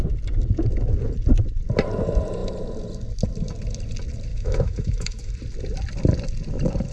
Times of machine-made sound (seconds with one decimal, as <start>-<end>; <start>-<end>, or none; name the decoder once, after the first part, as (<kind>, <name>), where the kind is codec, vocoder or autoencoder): 4.3-5.3 (autoencoder, DAC-VAE)